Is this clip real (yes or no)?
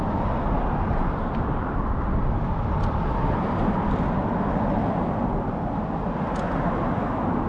yes